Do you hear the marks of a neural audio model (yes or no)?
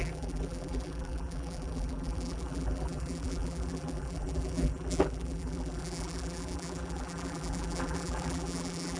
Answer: yes